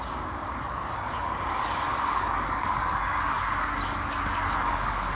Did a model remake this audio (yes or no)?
yes